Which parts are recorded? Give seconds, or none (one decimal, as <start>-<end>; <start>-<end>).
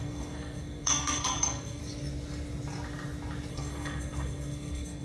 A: 1.8-3.5